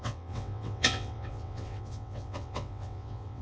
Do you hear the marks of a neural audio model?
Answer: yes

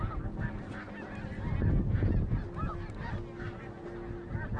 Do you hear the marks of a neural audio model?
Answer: no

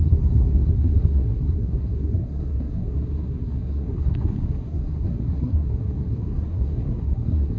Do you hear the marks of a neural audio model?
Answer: yes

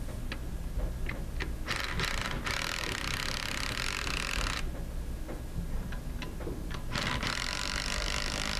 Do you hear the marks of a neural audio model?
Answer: no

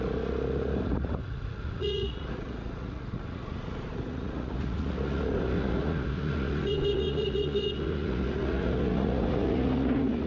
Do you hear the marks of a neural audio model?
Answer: yes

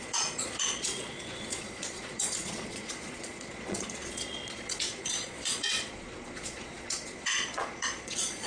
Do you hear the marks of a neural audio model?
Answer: yes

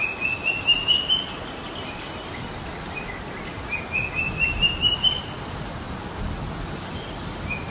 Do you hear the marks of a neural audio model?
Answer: no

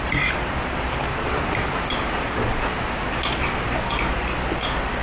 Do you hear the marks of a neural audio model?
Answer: no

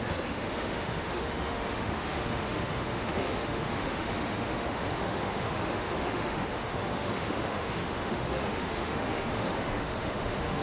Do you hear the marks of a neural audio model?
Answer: yes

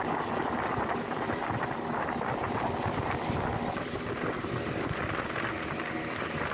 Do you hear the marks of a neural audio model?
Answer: yes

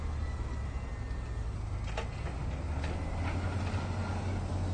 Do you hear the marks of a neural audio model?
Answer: no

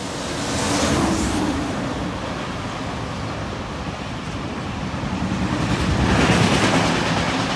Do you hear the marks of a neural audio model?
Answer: no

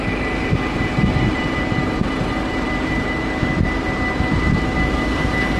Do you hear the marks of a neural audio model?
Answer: yes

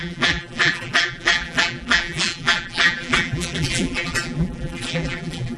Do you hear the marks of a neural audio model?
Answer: yes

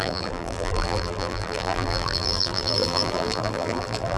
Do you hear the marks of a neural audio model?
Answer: yes